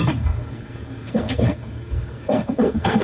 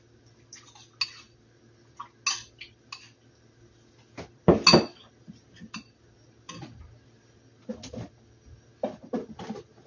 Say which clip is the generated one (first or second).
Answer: first